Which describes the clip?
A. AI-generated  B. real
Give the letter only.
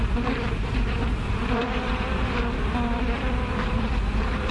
A